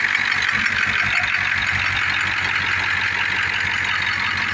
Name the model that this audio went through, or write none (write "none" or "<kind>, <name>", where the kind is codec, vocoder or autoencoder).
none